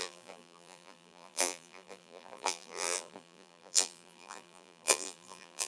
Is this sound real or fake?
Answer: fake